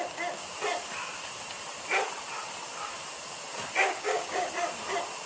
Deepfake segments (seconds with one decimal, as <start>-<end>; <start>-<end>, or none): 3.8-4.5

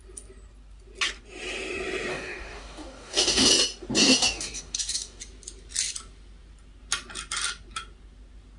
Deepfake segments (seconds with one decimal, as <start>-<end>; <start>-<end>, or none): 2.1-3.5; 4.0-5.2

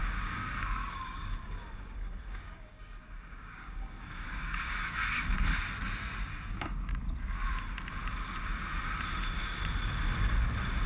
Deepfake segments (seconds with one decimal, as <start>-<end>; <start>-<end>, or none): 0.0-5.0; 6.3-6.9

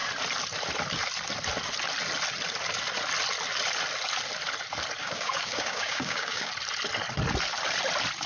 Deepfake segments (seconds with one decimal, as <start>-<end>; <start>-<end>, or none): 5.0-6.5

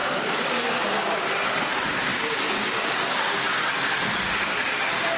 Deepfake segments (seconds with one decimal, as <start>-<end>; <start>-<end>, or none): 0.0-0.5; 2.1-3.3